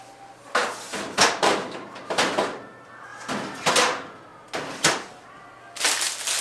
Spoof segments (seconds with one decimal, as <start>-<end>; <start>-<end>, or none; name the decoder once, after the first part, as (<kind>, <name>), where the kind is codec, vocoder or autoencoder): 0.6-2.0 (vocoder, BigVGAN v2)